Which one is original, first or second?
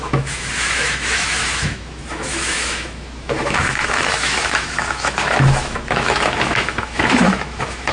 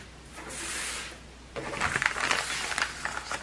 second